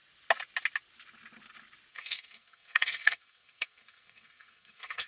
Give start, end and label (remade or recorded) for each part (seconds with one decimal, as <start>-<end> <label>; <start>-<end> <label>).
0.0-1.9 recorded; 1.9-5.1 remade